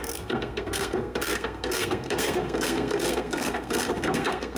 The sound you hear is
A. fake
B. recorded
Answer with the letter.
A